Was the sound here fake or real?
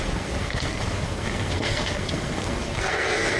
fake